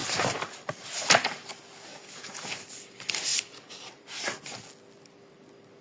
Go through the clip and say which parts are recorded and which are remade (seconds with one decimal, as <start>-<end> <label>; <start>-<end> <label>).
0.0-0.6 remade; 0.6-1.9 recorded; 1.9-2.7 remade; 2.7-3.3 recorded; 3.3-4.7 remade; 4.7-5.8 recorded